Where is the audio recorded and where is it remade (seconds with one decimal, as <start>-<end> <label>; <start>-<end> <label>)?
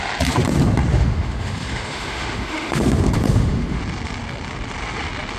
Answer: 0.0-0.9 recorded; 0.9-3.8 remade; 3.8-5.4 recorded